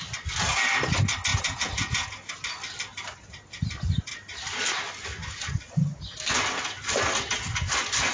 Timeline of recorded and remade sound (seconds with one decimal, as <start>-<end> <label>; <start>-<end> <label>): 0.0-1.3 recorded; 1.3-2.3 remade; 2.3-8.1 recorded